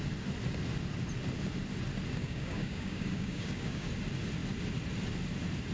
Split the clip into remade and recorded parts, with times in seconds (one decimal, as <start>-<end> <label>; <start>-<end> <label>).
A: 0.0-2.2 recorded; 2.2-3.9 remade; 3.9-5.7 recorded